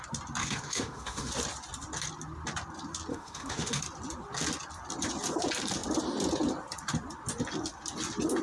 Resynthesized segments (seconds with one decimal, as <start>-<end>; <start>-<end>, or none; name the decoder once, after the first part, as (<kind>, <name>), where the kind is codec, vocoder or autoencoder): 0.4-1.3 (autoencoder, DAC-VAE); 3.1-3.8